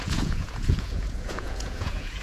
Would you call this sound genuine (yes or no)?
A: no